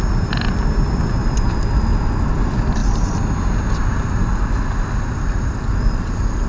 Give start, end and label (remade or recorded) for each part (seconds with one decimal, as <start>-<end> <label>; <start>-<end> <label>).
0.0-1.2 remade; 1.2-2.1 recorded; 2.1-2.8 remade; 2.8-5.0 recorded; 5.0-6.5 remade